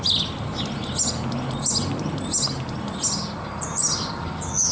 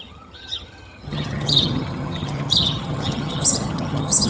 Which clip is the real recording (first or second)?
first